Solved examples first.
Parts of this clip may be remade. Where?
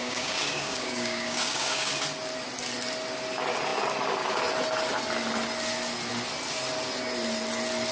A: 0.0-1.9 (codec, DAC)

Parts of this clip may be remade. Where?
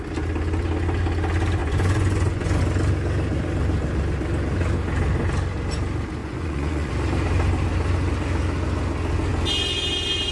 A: 1.6-2.6 (vocoder, Vocos); 6.2-6.9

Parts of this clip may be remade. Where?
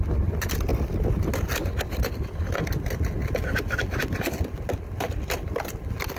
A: none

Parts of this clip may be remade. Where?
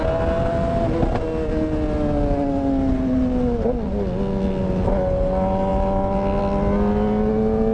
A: none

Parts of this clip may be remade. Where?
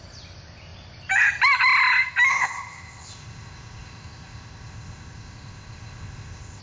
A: 2.3-6.6 (codec, ZipCodec)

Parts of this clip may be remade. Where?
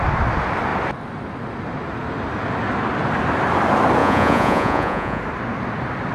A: 4.0-5.2 (vocoder, Vocos)